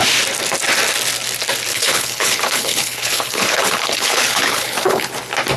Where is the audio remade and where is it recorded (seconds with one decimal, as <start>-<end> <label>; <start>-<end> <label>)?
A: 0.0-1.7 recorded; 1.7-5.1 remade; 5.1-5.6 recorded